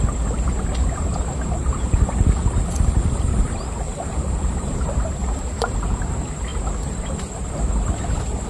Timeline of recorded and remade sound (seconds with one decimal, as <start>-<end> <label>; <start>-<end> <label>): 0.0-8.5 recorded